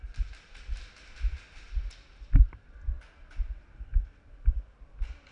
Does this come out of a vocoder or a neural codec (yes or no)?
no